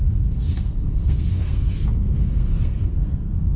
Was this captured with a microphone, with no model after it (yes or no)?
no